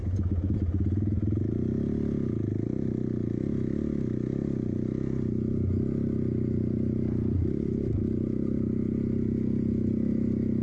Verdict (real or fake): real